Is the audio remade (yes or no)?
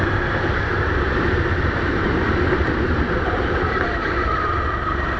yes